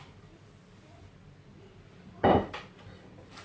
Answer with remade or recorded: recorded